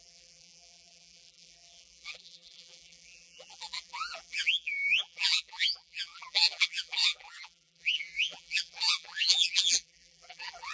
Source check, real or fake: fake